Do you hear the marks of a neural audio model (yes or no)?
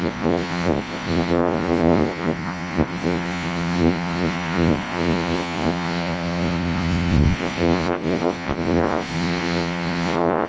yes